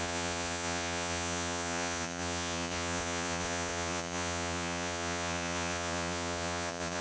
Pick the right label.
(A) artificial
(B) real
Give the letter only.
A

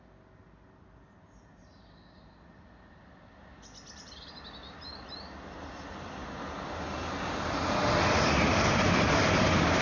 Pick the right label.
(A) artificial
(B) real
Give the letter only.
B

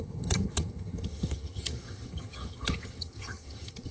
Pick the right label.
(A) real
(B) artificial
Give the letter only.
B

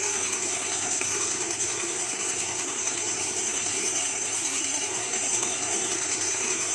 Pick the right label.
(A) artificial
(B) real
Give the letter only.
A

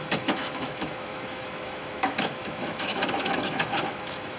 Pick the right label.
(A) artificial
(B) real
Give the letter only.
A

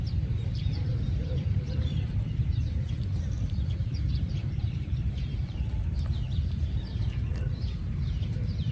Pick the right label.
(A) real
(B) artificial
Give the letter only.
B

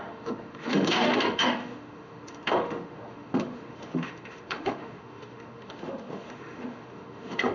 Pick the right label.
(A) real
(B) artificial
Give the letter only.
B